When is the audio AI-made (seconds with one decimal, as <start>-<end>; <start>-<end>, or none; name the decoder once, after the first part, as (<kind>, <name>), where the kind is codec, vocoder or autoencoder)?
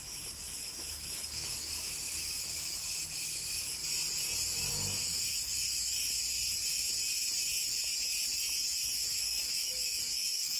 0.0-3.8 (autoencoder, DAC-VAE); 4.7-5.9; 9.1-10.6